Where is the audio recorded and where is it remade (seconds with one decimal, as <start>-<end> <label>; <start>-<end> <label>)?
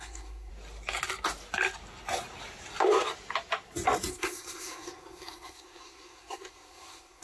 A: 0.0-0.5 remade; 0.5-4.1 recorded; 4.1-7.2 remade